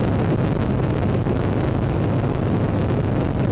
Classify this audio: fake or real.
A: real